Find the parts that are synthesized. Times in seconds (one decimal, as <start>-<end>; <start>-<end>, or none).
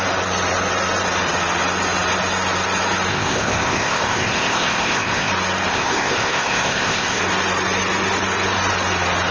3.1-5.3; 5.7-7.2